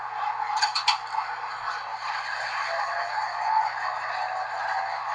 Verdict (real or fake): real